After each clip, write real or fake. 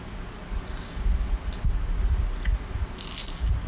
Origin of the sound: real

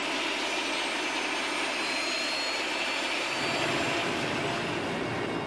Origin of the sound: real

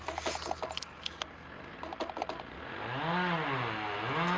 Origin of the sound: real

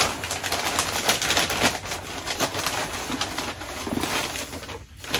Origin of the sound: real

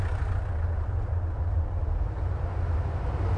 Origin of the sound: real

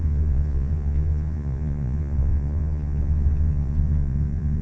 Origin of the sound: fake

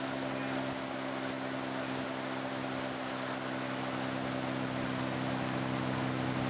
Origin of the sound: real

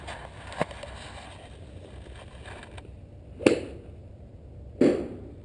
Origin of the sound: real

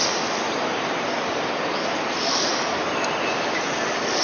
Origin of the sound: real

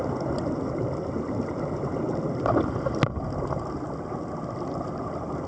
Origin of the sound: real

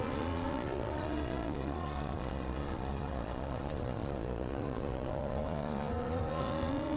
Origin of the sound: fake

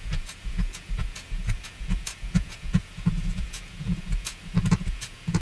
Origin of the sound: fake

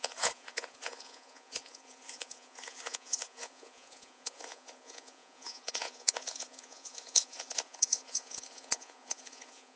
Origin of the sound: fake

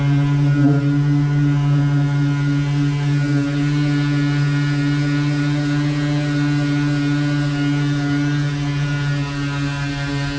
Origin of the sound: real